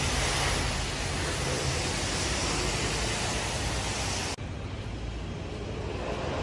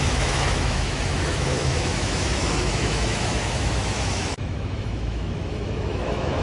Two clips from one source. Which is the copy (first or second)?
second